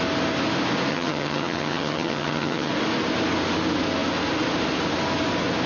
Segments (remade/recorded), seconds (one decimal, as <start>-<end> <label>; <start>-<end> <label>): 0.0-0.9 recorded; 0.9-2.7 remade; 2.7-5.7 recorded